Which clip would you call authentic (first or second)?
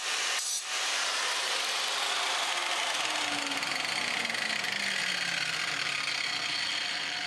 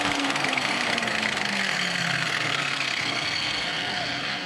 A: first